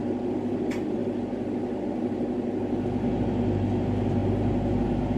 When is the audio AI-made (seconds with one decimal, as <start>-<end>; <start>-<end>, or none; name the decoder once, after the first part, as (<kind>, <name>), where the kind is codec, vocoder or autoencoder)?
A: none